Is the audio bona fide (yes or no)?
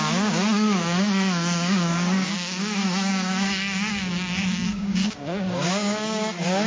no